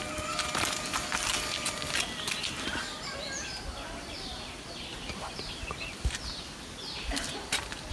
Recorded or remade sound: recorded